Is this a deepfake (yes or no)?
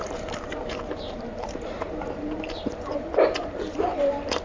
yes